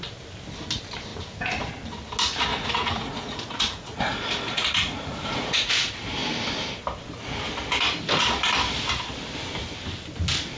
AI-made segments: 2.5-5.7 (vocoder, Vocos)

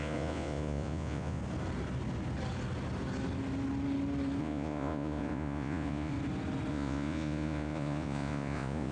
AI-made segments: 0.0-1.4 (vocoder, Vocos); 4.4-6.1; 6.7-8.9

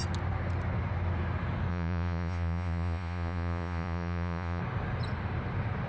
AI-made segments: 1.7-4.6 (vocoder, Vocos)

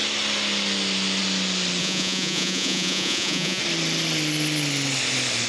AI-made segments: 1.8-3.6 (vocoder, Vocos)

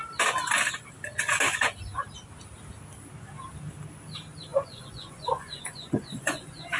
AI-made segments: 4.5-6.8 (vocoder, Vocos)

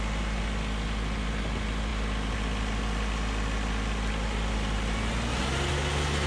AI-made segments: none

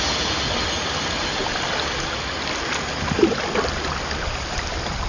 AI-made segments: none